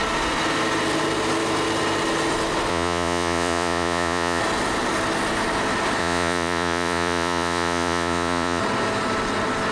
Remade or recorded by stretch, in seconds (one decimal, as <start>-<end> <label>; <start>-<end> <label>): 0.0-2.7 recorded; 2.7-4.4 remade; 4.4-6.0 recorded; 6.0-8.6 remade; 8.6-9.7 recorded